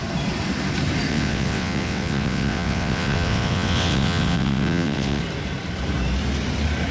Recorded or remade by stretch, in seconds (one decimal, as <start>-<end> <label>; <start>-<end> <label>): 0.0-1.1 recorded; 1.1-5.2 remade; 5.2-6.9 recorded